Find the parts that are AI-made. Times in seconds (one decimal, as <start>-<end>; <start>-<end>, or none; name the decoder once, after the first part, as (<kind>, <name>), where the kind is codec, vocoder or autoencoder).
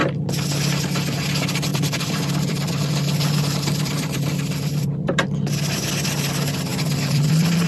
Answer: 1.7-5.9 (vocoder, BigVGAN v2); 6.7-7.7